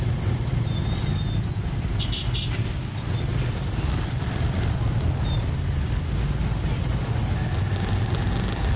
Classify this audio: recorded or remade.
recorded